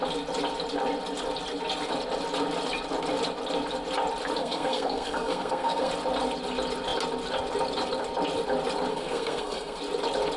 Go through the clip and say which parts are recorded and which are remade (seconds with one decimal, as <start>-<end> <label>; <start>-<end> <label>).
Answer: 0.0-4.4 recorded; 4.4-5.9 remade; 5.9-8.9 recorded; 8.9-9.8 remade; 9.8-10.4 recorded